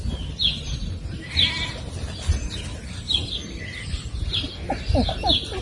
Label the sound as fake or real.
real